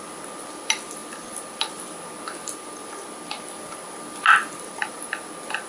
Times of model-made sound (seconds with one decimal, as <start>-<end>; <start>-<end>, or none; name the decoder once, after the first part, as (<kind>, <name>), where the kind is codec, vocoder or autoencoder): none